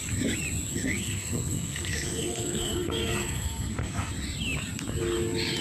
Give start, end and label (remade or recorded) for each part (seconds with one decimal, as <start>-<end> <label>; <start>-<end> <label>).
0.0-0.7 recorded; 0.7-4.1 remade; 4.1-5.6 recorded